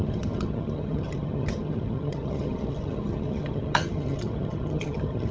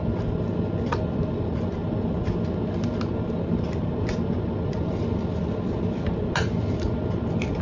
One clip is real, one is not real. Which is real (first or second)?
second